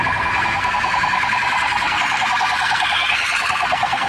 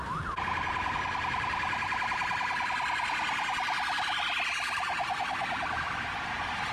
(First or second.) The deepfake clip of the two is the first